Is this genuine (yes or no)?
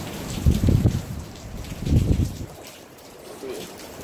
no